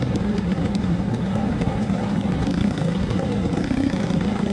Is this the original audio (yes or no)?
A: no